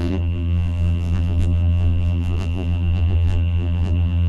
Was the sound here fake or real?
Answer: fake